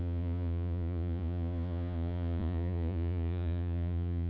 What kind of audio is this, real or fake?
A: fake